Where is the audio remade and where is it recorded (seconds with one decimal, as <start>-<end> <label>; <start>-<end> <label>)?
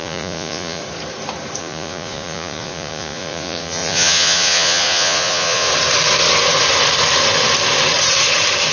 0.0-0.8 remade; 0.8-1.6 recorded; 1.6-5.7 remade; 5.7-8.7 recorded